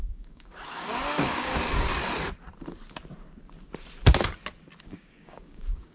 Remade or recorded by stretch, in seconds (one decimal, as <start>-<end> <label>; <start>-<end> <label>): 0.0-1.5 remade; 1.5-4.8 recorded; 4.8-5.9 remade